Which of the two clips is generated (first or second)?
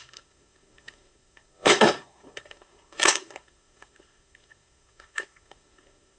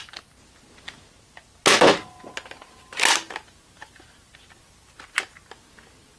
first